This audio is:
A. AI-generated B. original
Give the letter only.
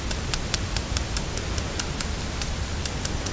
B